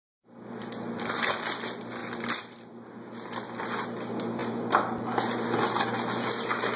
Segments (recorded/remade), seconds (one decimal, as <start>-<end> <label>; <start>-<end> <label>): 0.0-6.8 recorded